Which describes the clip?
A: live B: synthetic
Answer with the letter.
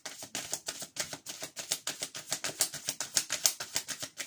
A